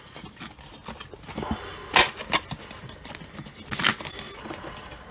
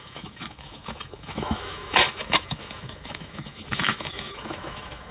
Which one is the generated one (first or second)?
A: second